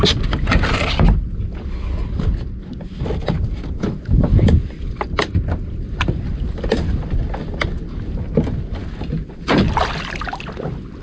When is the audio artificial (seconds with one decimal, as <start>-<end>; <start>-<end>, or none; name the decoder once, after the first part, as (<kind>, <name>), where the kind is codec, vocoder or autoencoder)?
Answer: none